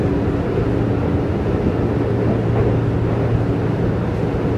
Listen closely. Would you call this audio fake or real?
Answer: real